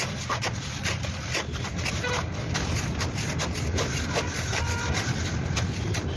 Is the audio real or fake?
fake